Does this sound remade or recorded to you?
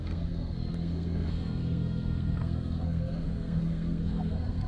remade